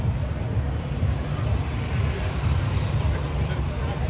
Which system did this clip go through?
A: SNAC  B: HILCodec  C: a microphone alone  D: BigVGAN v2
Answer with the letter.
C